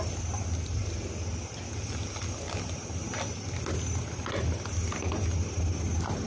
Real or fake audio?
real